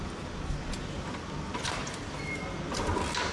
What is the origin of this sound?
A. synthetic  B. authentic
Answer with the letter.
B